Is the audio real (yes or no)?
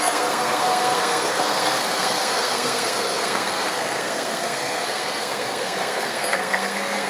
no